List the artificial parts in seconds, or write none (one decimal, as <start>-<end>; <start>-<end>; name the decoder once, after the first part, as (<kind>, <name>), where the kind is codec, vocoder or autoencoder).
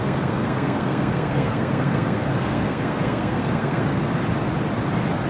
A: 0.0-4.0 (codec, SNAC)